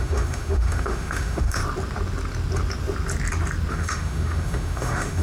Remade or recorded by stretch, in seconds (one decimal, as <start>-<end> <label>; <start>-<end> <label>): 0.0-1.6 remade; 1.6-3.7 recorded; 3.7-5.2 remade